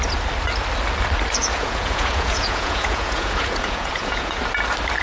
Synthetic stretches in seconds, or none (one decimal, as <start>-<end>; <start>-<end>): 1.4-4.4